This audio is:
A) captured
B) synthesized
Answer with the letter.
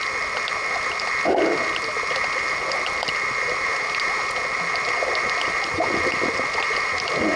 A